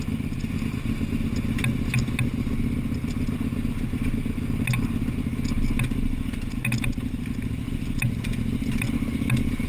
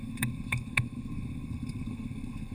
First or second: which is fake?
second